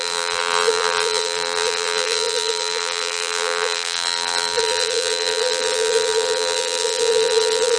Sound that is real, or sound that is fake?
fake